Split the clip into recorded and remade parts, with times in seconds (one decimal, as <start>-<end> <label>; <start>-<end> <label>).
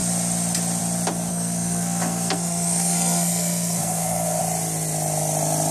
0.0-1.3 recorded; 1.3-4.4 remade; 4.4-5.7 recorded